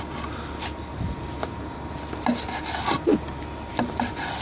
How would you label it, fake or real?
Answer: real